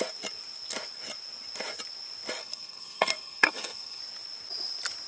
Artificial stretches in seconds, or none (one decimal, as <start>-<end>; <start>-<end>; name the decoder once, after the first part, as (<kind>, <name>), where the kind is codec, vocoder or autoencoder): 2.4-4.0 (codec, SNAC)